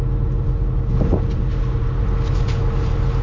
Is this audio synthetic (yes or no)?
no